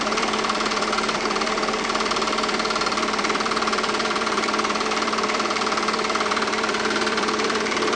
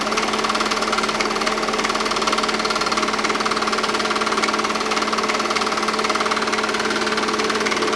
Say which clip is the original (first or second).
second